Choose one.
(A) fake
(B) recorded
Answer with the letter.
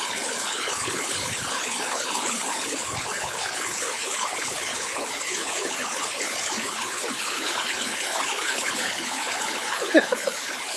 A